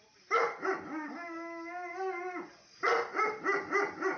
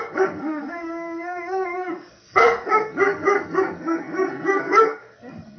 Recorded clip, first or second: first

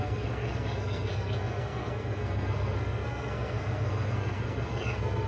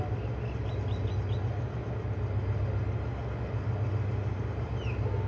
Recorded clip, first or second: second